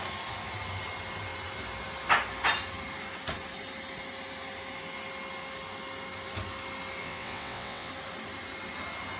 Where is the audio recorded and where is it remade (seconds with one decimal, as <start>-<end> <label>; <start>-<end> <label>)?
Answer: 0.0-7.0 recorded; 7.0-7.9 remade; 7.9-9.2 recorded